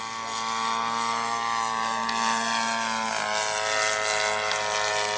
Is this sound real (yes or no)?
yes